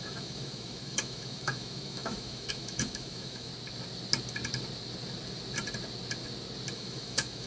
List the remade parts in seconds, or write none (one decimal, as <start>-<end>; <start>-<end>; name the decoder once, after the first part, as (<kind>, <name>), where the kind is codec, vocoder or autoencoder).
0.0-3.5 (autoencoder, DAC-VAE); 6.7-7.5